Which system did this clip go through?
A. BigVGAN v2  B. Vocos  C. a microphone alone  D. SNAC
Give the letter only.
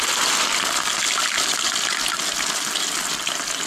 C